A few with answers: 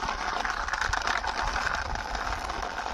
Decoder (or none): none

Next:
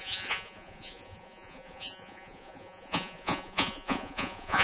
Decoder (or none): vocoder, Vocos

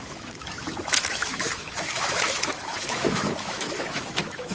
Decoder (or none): autoencoder, DAC-VAE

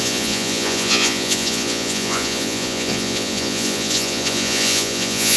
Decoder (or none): vocoder, Vocos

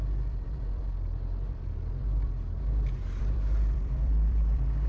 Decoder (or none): vocoder, BigVGAN v2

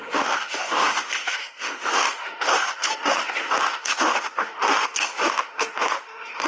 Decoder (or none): autoencoder, DAC-VAE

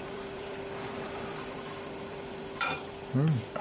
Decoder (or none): vocoder, BigVGAN v2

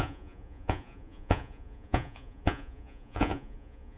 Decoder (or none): vocoder, Vocos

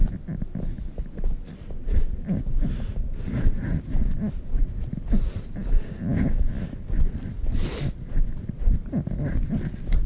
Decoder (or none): none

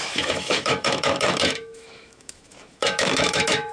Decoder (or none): autoencoder, DAC-VAE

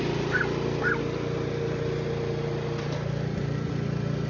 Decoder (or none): none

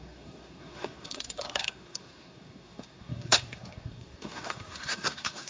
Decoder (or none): codec, SNAC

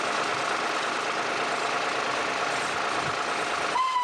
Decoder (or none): none